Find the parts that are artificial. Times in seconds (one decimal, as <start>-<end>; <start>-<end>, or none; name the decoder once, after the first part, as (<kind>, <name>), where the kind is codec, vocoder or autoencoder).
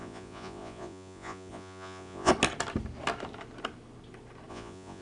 0.0-2.3 (vocoder, Vocos); 4.5-5.0